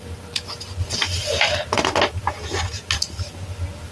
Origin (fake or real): real